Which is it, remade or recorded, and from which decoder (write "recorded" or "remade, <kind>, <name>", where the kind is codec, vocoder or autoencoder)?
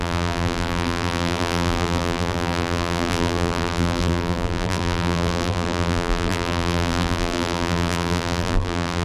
remade, vocoder, BigVGAN v2